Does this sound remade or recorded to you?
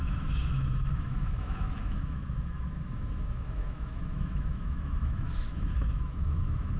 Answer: remade